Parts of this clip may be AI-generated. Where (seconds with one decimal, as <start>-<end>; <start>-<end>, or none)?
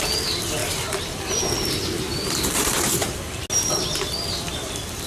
none